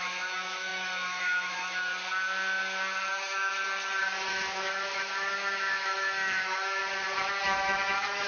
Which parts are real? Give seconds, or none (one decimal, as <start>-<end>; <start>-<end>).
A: 1.9-3.1; 3.5-4.3; 6.8-7.4